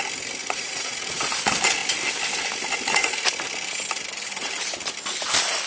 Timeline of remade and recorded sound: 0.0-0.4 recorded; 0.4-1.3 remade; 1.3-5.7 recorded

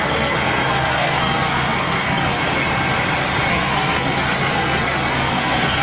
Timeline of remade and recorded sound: 0.0-2.4 remade; 2.4-3.5 recorded; 3.5-5.8 remade

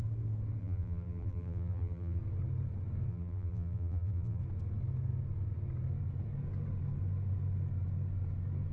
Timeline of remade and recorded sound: 0.0-0.6 recorded; 0.6-2.2 remade; 2.2-3.1 recorded; 3.1-4.4 remade; 4.4-8.7 recorded

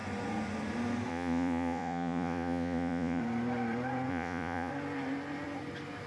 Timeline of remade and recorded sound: 0.0-1.1 recorded; 1.1-3.2 remade; 3.2-4.1 recorded; 4.1-4.7 remade; 4.7-6.1 recorded